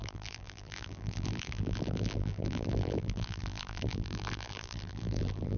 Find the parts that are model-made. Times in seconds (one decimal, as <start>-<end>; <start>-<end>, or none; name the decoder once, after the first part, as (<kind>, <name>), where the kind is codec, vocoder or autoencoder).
0.0-5.6 (vocoder, BigVGAN v2)